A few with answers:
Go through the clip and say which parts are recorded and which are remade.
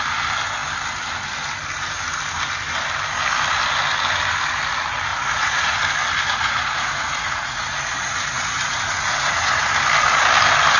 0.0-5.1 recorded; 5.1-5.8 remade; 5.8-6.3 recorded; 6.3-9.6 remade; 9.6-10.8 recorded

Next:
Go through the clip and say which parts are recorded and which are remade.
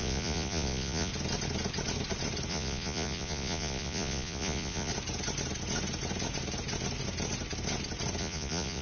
0.0-1.1 remade; 1.1-2.5 recorded; 2.5-4.9 remade; 4.9-8.2 recorded; 8.2-8.8 remade